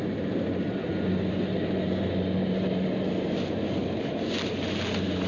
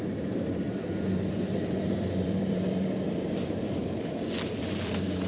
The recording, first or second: first